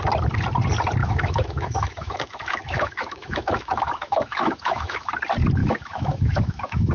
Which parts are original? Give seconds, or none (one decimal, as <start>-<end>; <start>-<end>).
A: 0.0-1.0; 5.1-5.6